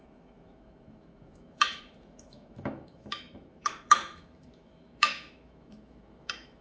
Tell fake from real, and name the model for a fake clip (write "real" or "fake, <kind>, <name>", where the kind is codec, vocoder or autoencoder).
fake, autoencoder, DAC-VAE